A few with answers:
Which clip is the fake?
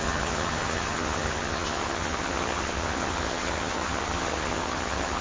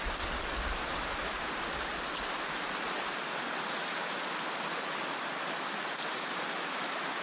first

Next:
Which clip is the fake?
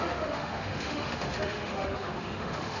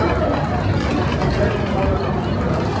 first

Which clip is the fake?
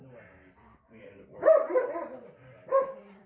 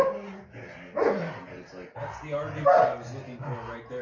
first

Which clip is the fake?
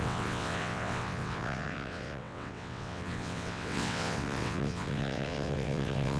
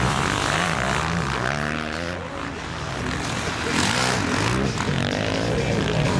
first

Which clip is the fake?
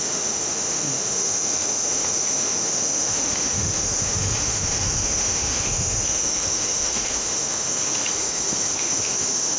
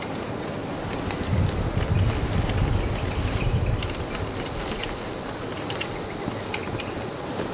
first